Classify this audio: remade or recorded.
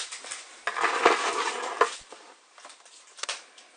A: remade